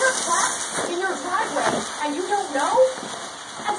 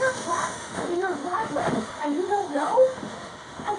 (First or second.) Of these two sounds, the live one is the first